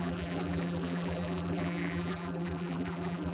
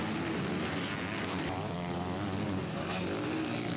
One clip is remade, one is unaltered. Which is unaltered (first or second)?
second